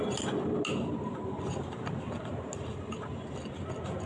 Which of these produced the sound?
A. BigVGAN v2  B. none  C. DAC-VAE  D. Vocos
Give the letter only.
B